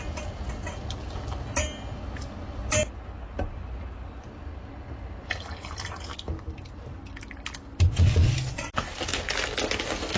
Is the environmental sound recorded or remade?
recorded